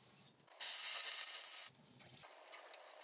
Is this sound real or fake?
real